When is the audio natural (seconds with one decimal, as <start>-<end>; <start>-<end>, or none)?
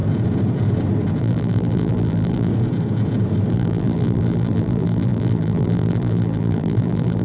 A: 0.0-1.2; 2.5-3.5